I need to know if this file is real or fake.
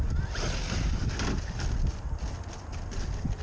real